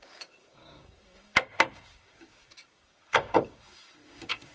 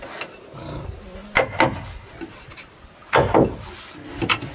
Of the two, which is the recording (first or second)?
second